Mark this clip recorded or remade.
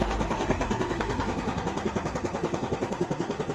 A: remade